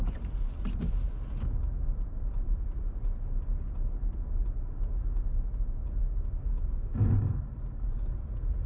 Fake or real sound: real